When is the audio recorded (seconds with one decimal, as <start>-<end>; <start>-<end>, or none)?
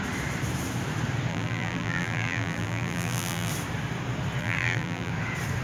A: 0.0-1.3; 3.5-4.4; 5.1-5.6